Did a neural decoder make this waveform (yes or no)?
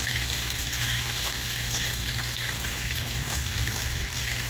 yes